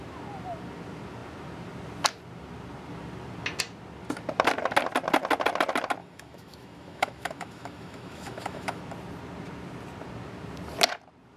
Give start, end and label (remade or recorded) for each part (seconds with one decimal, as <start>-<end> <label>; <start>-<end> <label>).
0.0-6.0 recorded; 6.0-8.8 remade; 8.8-11.4 recorded